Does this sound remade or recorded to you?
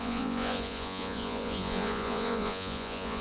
remade